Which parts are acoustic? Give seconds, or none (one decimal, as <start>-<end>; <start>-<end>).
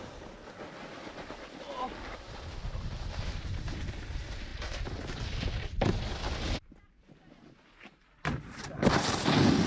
0.0-2.6; 3.8-9.7